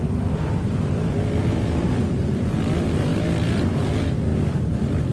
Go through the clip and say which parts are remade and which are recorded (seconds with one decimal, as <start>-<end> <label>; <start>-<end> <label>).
0.0-5.1 recorded